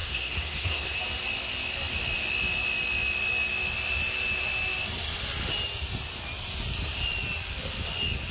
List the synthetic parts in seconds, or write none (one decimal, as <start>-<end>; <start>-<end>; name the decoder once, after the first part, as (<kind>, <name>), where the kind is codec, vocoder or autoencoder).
0.0-1.0 (codec, SNAC)